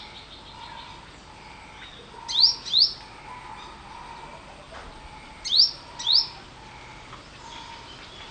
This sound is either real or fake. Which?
real